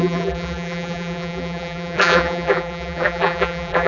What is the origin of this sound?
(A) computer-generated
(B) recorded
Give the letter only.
A